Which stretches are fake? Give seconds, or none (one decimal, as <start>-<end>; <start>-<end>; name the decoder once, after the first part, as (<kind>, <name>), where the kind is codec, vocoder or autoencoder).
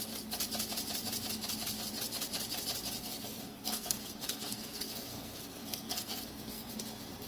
3.0-6.7 (codec, SNAC)